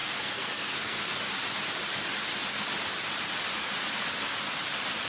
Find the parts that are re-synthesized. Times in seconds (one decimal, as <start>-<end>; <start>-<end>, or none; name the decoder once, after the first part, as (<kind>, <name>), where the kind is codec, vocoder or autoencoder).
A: 0.0-1.2 (codec, SNAC)